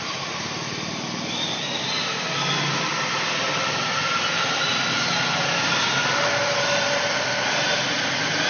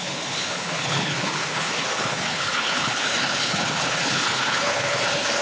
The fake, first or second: second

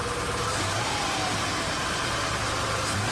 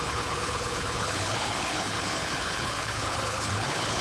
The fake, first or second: second